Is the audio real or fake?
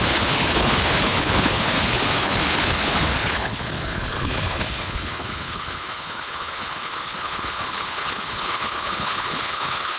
fake